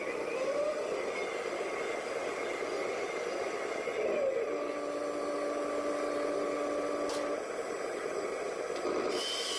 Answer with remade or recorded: recorded